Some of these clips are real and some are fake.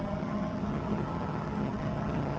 fake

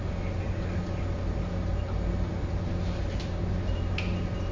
real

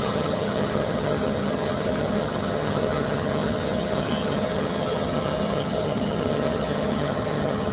fake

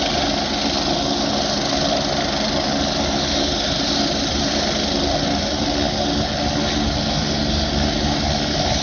real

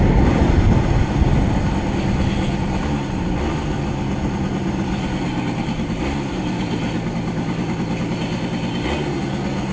real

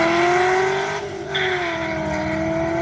real